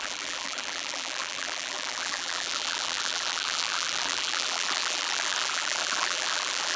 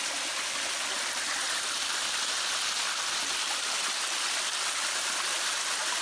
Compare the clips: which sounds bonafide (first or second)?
second